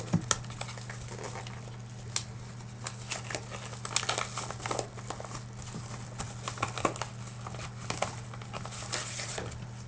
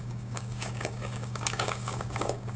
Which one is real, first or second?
first